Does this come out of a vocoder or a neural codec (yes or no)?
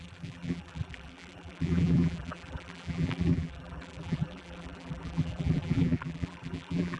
yes